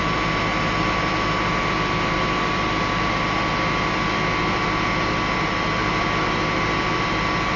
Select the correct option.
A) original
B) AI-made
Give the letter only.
A